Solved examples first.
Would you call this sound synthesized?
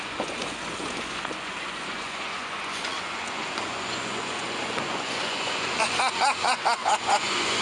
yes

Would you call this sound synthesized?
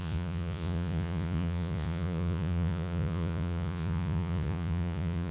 yes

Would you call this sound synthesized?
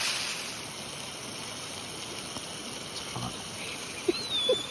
no